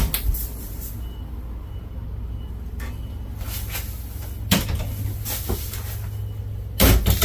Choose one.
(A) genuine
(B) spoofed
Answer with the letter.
A